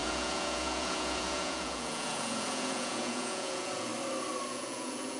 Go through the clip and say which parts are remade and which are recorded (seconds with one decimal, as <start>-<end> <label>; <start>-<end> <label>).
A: 0.0-3.9 remade; 3.9-4.5 recorded; 4.5-5.2 remade